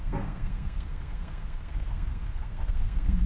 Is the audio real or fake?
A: fake